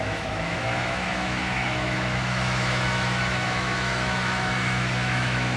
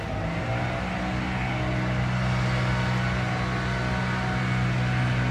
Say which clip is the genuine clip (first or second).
second